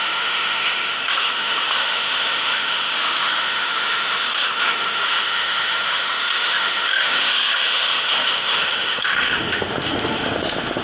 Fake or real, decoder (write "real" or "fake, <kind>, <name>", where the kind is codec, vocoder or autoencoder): fake, autoencoder, DAC-VAE